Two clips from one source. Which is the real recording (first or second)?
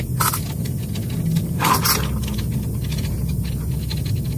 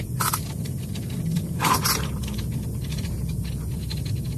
first